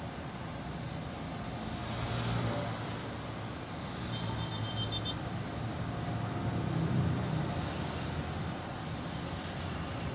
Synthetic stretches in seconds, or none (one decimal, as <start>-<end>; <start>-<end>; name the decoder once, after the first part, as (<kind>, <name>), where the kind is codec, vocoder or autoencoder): none